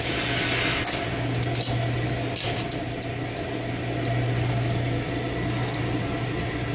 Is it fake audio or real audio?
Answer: real